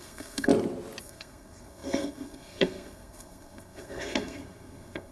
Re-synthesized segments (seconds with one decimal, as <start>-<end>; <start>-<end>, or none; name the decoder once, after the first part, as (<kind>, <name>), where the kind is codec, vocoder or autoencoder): 0.0-0.5 (codec, SNAC); 1.0-5.1